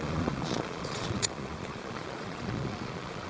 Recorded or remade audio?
remade